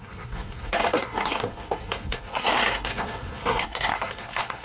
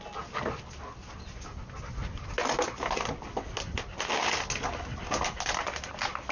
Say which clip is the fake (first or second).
first